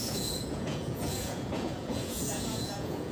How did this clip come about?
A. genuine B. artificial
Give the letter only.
B